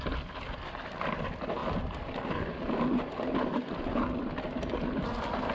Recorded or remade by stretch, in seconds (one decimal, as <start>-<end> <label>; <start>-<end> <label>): 0.0-5.5 recorded